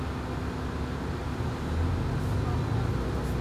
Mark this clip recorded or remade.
recorded